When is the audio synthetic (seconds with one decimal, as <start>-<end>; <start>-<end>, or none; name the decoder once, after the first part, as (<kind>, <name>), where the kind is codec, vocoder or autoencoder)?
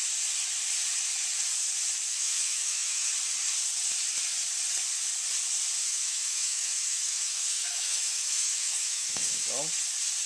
2.1-3.1 (autoencoder, DAC-VAE); 5.8-9.5